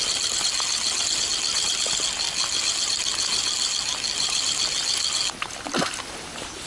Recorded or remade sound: recorded